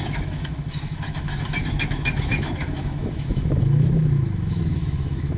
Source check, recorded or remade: remade